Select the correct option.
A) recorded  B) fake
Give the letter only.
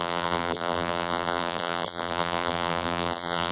B